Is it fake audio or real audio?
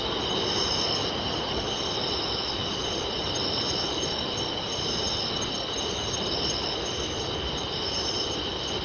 real